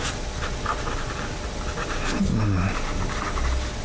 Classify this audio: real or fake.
real